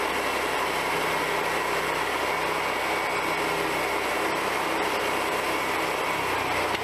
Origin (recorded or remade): recorded